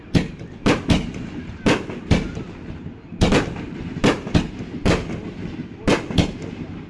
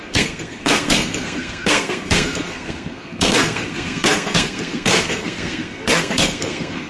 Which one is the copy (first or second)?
second